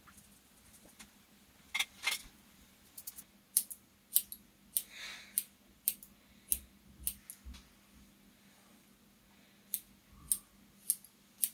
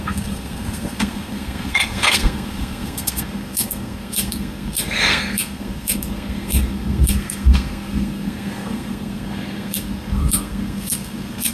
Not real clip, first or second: second